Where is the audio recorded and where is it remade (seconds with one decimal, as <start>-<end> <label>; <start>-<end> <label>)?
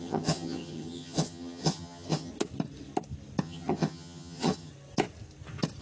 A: 0.0-2.3 remade; 2.3-3.4 recorded; 3.4-4.7 remade; 4.7-5.8 recorded